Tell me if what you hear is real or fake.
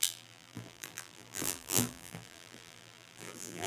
fake